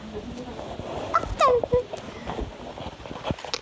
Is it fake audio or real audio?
real